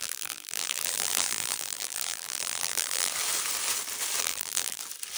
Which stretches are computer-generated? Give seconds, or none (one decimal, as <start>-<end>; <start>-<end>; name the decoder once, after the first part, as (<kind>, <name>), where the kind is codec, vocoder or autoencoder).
0.0-3.1 (vocoder, BigVGAN v2); 4.2-4.8